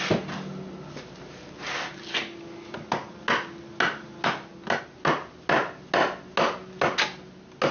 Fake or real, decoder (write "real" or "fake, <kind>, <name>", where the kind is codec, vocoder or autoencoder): real